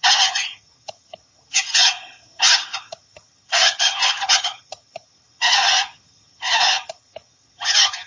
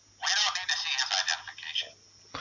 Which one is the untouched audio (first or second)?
second